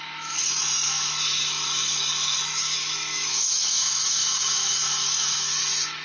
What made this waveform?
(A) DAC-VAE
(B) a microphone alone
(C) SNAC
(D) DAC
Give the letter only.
A